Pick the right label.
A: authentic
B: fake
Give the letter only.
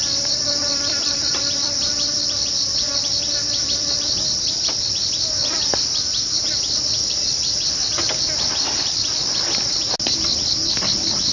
A